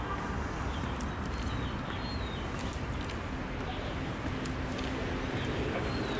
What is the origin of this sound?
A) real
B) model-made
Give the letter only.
A